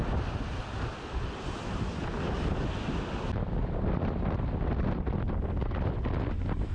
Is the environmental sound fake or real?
real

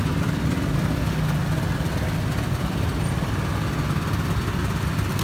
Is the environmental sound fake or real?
real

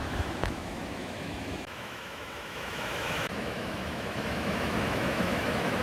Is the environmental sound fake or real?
fake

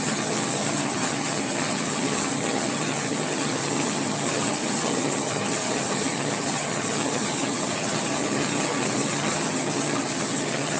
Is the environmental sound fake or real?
fake